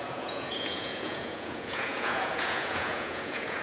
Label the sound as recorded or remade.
remade